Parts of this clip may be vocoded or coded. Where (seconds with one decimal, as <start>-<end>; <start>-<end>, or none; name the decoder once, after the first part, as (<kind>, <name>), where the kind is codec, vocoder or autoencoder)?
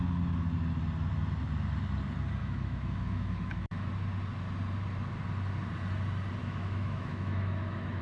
2.4-3.9 (autoencoder, DAC-VAE); 6.4-8.0